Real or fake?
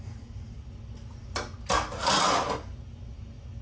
real